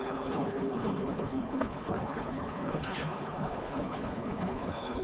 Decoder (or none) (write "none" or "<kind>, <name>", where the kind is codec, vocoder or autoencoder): codec, HILCodec